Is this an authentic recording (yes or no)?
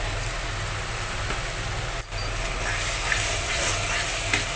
yes